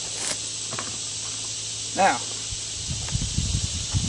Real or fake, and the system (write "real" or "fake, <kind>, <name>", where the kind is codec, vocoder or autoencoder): real